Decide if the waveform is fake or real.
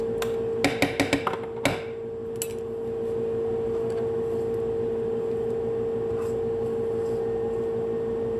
real